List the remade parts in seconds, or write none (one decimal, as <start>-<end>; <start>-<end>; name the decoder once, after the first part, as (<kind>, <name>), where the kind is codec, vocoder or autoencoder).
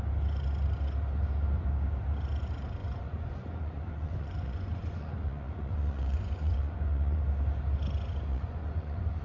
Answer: 2.8-7.2 (vocoder, Vocos); 8.3-9.2